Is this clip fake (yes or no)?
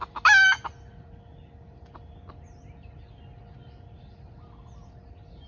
no